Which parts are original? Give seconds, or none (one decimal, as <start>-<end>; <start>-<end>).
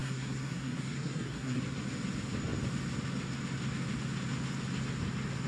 1.6-5.5